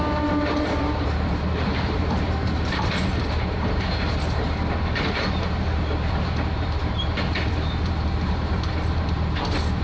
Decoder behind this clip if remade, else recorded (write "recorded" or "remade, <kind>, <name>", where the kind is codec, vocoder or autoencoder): remade, vocoder, BigVGAN v2